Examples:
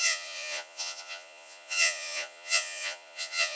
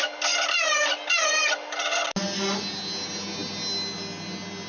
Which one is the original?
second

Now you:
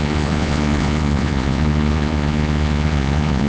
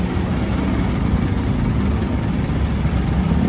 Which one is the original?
second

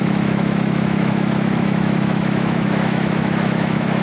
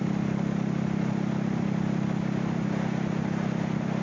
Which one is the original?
second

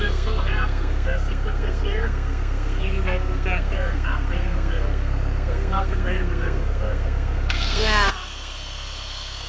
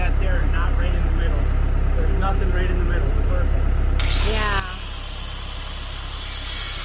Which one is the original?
second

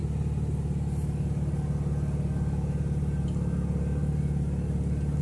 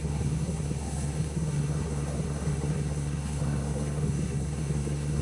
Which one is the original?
first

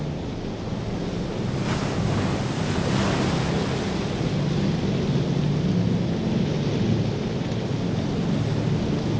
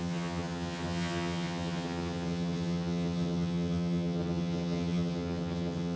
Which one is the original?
first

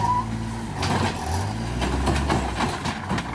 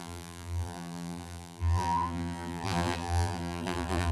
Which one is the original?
first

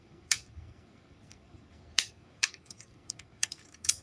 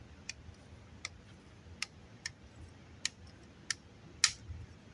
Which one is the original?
second